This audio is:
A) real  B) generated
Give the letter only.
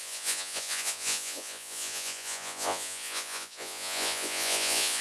B